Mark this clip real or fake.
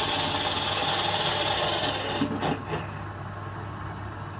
real